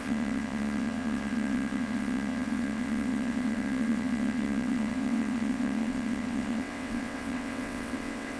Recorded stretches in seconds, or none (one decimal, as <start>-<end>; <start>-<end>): none